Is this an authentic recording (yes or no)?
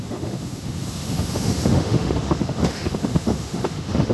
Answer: no